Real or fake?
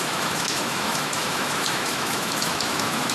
fake